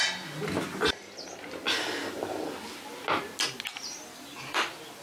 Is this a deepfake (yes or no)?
no